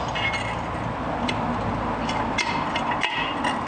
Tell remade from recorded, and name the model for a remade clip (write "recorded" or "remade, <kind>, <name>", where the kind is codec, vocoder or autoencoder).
recorded